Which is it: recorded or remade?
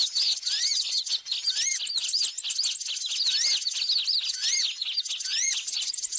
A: recorded